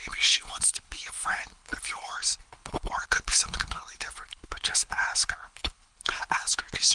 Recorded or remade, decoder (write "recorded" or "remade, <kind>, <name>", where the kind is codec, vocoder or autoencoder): remade, codec, HILCodec